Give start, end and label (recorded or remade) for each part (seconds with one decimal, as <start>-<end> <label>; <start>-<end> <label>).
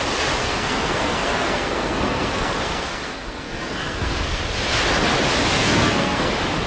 0.0-0.4 recorded; 0.4-4.4 remade; 4.4-5.5 recorded; 5.5-6.3 remade; 6.3-6.7 recorded